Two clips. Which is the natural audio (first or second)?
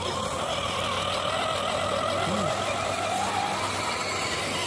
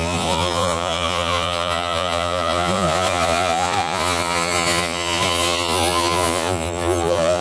first